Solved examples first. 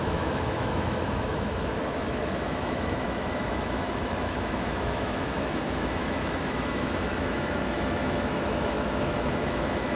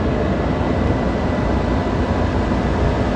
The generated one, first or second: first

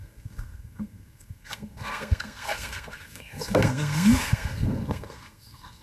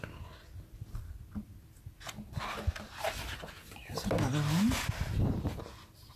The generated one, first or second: first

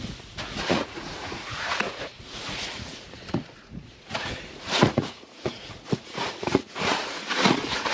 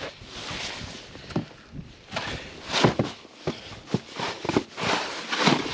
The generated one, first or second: first